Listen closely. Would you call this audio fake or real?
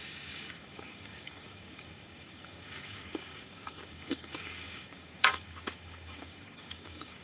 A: fake